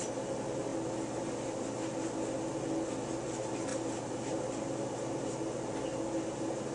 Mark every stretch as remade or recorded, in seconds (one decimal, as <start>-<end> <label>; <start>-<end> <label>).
0.0-6.7 recorded